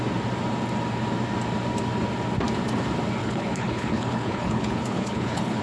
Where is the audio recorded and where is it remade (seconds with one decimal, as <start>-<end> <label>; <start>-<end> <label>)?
0.0-3.2 recorded; 3.2-5.6 remade